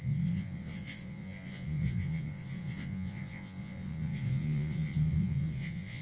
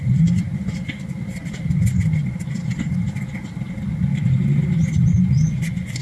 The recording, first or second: second